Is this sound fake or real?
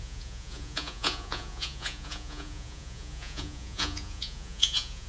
fake